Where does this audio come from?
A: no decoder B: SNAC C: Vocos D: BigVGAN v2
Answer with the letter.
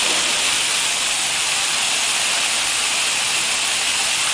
A